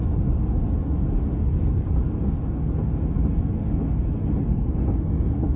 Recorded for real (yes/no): yes